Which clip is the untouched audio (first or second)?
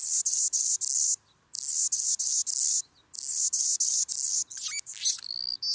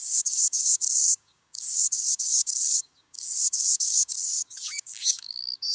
first